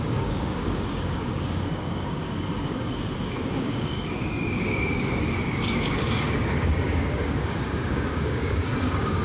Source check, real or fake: fake